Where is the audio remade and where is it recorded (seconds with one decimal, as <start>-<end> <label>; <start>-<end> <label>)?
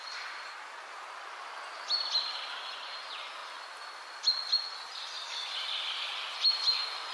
0.0-7.1 recorded